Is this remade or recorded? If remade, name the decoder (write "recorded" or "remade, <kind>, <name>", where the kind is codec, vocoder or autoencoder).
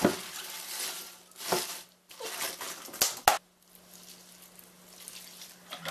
recorded